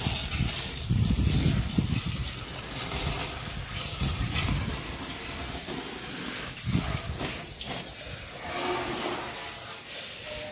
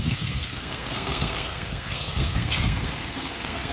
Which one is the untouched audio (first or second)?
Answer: first